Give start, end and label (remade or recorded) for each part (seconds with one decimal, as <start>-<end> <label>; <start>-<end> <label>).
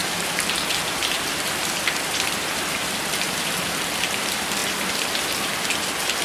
0.0-3.1 recorded; 3.1-4.6 remade; 4.6-5.7 recorded; 5.7-6.2 remade